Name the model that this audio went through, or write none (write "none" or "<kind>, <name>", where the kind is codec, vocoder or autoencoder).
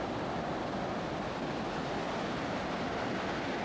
none